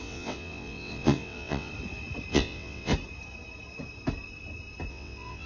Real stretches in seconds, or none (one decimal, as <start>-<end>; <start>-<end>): 1.7-2.3; 2.9-4.9